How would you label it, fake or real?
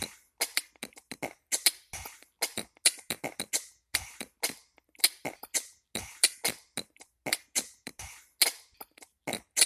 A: real